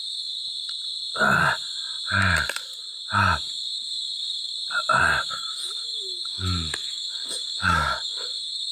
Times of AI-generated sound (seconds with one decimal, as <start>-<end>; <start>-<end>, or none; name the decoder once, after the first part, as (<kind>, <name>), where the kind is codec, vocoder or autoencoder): 0.0-0.4 (codec, DAC); 3.6-4.5; 5.3-8.7